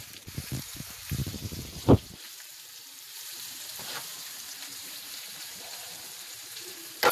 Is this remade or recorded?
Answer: remade